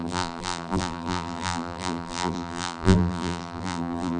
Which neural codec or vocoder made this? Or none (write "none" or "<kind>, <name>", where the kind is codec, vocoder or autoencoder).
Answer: vocoder, BigVGAN v2